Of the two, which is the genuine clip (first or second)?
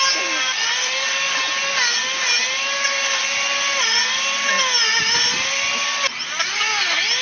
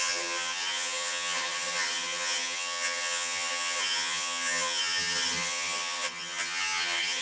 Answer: first